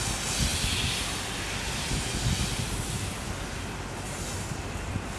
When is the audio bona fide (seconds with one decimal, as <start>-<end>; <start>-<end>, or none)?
0.0-5.2